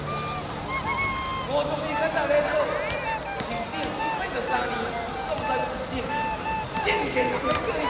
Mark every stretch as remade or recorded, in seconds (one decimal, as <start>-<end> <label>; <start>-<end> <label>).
0.0-7.9 recorded